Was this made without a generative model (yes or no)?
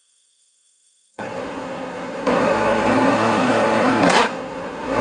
no